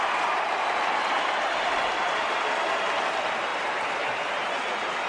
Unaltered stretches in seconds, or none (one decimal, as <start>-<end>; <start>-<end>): 0.0-3.5; 4.6-5.1